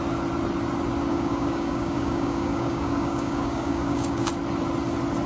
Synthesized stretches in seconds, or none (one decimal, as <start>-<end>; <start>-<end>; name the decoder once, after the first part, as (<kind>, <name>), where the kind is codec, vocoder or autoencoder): 1.1-4.3 (codec, DAC)